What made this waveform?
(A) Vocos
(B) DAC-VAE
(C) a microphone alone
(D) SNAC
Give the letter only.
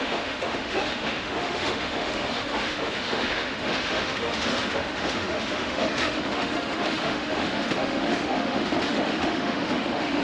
B